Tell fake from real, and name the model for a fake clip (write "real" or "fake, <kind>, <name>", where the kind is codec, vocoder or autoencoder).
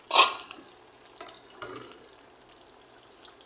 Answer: real